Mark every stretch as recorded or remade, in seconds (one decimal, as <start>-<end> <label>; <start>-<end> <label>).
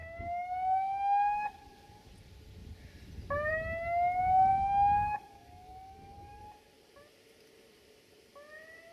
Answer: 0.0-2.1 remade; 2.1-4.5 recorded; 4.5-6.4 remade; 6.4-8.9 recorded